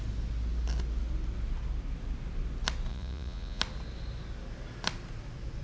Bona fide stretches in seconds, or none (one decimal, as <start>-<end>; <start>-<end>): 0.0-2.9; 3.6-5.6